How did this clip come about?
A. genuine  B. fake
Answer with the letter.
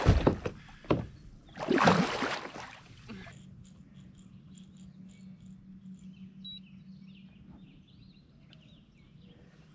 A